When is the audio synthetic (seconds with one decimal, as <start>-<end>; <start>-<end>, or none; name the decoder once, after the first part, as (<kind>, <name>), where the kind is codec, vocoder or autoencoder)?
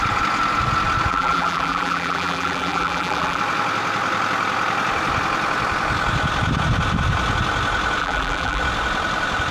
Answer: 1.1-3.4 (vocoder, BigVGAN v2); 8.0-8.6